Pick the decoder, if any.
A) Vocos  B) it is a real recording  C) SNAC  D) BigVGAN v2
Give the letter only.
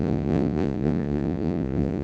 A